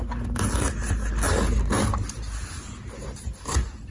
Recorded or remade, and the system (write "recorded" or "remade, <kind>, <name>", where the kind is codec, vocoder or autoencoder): recorded